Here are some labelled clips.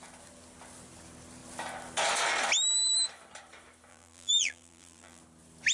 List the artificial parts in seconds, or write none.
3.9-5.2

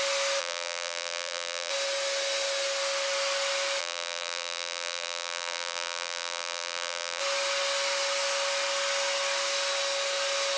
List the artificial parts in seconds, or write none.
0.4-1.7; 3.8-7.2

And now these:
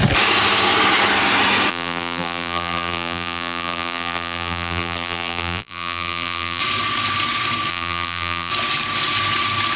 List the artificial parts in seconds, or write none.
1.7-6.6; 7.7-8.5

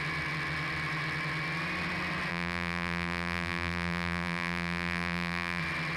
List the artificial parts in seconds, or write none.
2.3-5.6